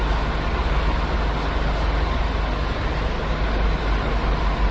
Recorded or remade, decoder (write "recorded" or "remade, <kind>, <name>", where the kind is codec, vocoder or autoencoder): recorded